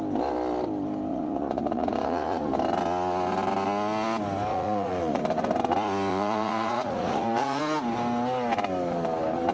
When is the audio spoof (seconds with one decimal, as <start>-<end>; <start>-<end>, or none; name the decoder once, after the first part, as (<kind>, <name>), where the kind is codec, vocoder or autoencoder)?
1.1-2.5 (vocoder, Vocos); 4.5-5.2; 6.1-7.6